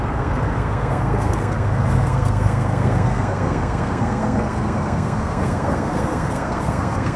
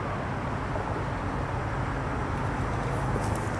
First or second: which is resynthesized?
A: first